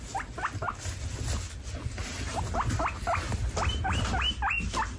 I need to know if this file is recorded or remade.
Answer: recorded